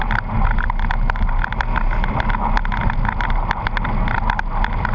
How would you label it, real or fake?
real